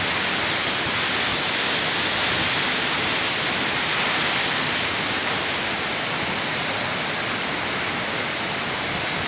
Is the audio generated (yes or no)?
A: no